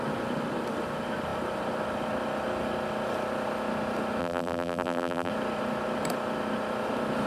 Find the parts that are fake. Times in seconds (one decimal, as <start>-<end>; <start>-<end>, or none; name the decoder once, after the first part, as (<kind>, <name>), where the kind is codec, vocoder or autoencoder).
4.2-5.3 (vocoder, BigVGAN v2)